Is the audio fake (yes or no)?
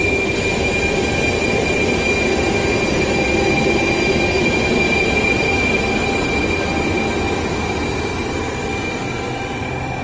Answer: no